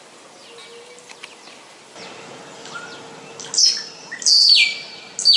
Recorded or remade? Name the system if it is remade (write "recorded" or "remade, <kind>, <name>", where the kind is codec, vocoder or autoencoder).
recorded